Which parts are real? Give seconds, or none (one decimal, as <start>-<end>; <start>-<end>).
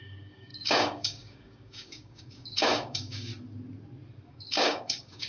3.3-4.3